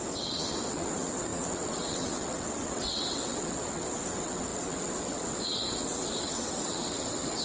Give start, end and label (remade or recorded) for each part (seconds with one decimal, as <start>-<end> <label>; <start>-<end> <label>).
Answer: 0.0-7.4 remade